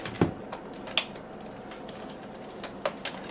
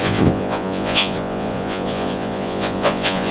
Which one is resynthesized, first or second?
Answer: second